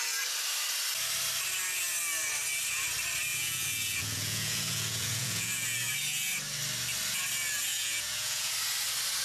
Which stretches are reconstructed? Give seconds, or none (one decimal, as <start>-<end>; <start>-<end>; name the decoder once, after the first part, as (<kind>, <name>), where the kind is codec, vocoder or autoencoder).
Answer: 3.3-5.9 (vocoder, Vocos); 7.7-8.5